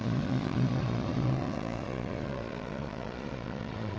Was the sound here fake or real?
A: fake